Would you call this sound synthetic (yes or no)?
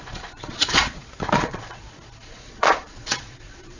yes